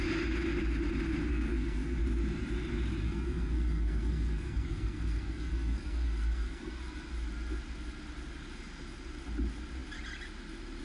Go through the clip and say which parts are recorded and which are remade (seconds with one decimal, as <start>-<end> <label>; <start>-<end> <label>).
0.0-1.3 recorded; 1.3-2.0 remade; 2.0-3.0 recorded; 3.0-6.8 remade; 6.8-10.8 recorded